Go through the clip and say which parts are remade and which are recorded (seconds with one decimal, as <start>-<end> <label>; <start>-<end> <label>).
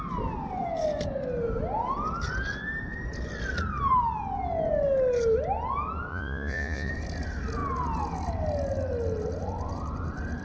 0.0-6.1 recorded; 6.1-6.9 remade; 6.9-10.4 recorded